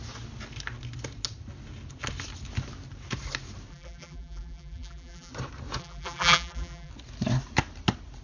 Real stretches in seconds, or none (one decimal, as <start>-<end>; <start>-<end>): 0.0-3.7; 5.3-5.8; 6.9-8.2

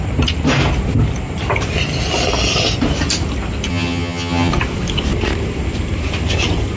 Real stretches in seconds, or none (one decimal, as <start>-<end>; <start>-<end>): 0.0-3.7; 4.5-6.8

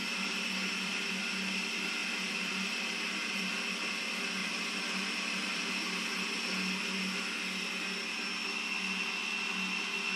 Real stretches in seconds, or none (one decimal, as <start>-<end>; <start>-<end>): 1.2-2.0; 3.4-4.4; 5.7-10.2

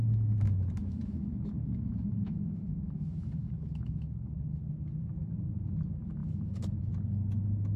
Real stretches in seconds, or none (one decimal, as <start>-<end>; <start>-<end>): 0.0-0.8; 4.3-6.2; 6.8-7.8

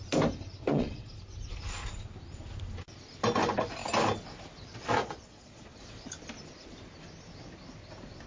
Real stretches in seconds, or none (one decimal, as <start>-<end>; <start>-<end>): 0.0-0.6; 1.2-5.0; 5.8-8.3

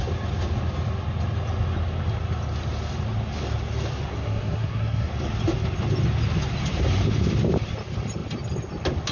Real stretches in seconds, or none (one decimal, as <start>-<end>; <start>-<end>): 0.0-4.1; 5.1-9.1